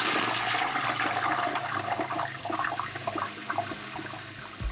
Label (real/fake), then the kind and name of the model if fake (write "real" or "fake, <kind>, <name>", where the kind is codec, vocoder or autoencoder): real